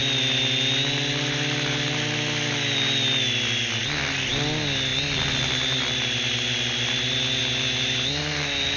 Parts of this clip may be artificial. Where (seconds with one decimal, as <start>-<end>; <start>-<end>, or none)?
none